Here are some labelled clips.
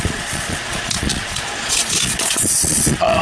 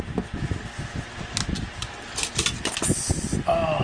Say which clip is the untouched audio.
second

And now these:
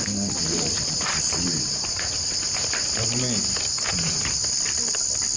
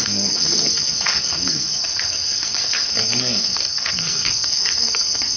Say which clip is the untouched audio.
first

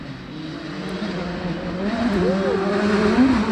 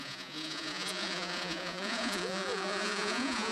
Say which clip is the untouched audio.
first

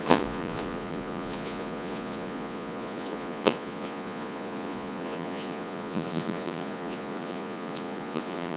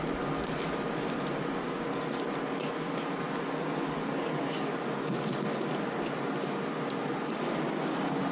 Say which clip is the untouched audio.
second